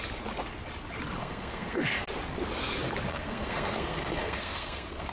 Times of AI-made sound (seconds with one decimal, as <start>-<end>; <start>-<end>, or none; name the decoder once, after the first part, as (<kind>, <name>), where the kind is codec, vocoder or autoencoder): 1.2-2.0 (codec, SNAC); 3.1-5.1

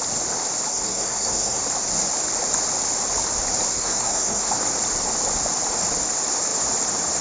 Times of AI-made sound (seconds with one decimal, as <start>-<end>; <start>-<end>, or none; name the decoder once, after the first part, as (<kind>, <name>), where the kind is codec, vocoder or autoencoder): 0.7-1.6 (codec, SNAC); 3.7-4.5

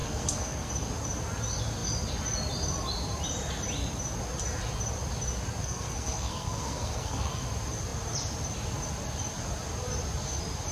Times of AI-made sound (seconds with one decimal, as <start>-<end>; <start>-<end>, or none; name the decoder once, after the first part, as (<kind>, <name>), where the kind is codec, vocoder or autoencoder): 0.0-0.7 (codec, SNAC); 5.6-7.4

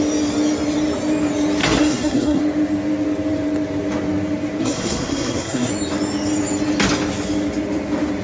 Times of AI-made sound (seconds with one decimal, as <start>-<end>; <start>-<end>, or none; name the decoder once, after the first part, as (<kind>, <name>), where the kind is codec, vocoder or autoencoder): 1.6-2.4 (codec, SNAC); 4.6-5.7

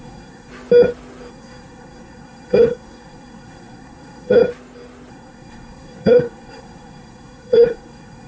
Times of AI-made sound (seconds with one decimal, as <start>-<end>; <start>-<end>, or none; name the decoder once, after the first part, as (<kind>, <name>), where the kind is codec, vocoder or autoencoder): 0.0-0.5 (codec, SNAC); 1.3-4.4; 5.1-8.3

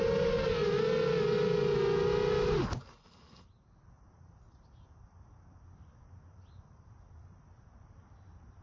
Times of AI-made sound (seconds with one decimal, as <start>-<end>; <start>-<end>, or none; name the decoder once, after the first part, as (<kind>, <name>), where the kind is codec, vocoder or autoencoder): none